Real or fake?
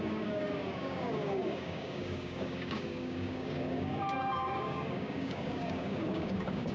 fake